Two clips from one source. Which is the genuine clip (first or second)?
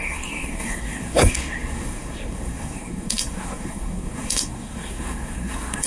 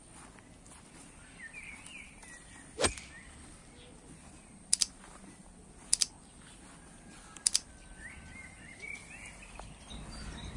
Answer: second